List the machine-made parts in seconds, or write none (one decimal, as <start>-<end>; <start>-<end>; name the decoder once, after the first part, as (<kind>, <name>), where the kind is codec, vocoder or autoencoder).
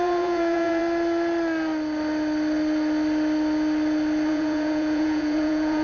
0.0-0.8 (vocoder, Vocos); 4.3-5.8